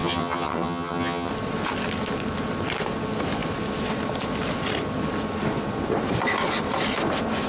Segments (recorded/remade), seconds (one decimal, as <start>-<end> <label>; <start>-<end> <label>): 0.0-1.3 remade; 1.3-7.5 recorded